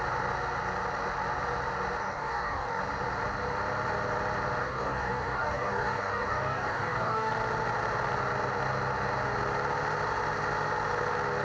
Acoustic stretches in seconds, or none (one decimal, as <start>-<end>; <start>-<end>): 0.0-2.0; 2.8-4.6; 7.3-11.4